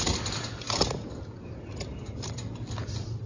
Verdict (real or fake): real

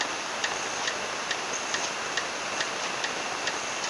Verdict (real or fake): real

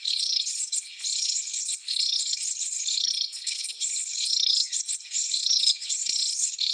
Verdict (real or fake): fake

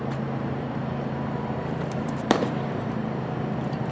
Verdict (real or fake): fake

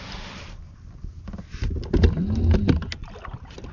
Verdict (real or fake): real